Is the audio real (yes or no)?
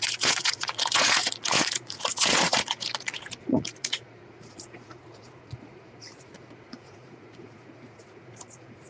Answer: no